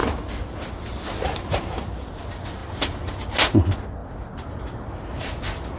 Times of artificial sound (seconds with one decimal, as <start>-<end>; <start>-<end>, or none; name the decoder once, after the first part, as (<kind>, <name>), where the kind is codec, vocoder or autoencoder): none